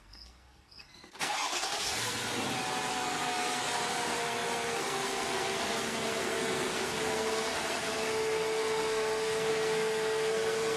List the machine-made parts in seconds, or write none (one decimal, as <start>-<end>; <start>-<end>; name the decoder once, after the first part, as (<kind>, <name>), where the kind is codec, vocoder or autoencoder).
0.0-2.2 (codec, SNAC); 2.9-10.8